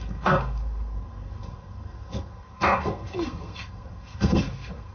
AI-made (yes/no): yes